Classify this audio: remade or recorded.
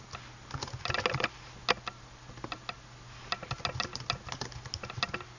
recorded